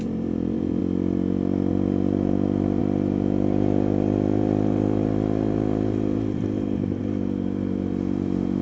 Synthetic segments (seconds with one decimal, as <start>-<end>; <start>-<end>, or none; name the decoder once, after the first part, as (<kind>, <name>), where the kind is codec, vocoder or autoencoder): 0.0-0.8 (vocoder, BigVGAN v2); 1.7-8.6